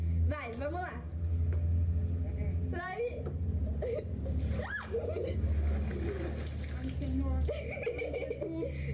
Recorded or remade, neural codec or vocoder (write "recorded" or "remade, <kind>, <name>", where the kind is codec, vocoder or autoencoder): recorded